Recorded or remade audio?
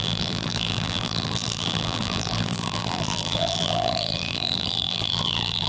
remade